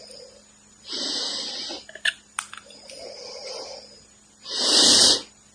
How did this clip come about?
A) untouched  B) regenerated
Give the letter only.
A